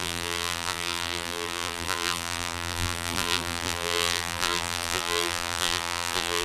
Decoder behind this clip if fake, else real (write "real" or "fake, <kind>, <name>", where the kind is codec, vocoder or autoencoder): fake, vocoder, BigVGAN v2